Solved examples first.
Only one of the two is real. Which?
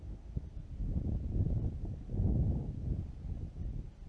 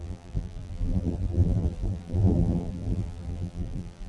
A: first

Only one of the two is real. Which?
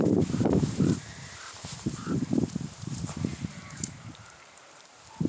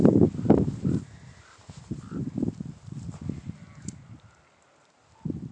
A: second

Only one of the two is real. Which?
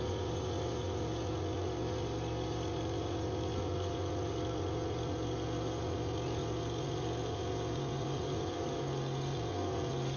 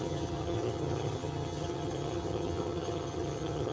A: first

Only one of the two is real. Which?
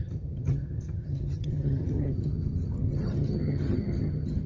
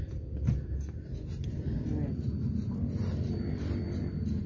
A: second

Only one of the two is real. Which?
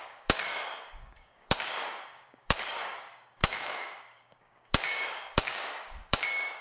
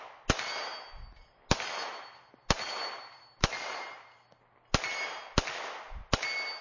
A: second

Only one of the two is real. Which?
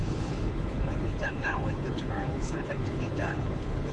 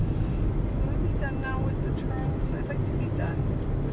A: second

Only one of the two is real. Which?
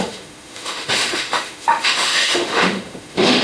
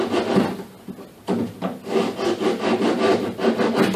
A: second